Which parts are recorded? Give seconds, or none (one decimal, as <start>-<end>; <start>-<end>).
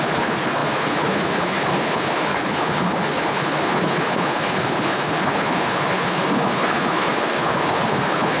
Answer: none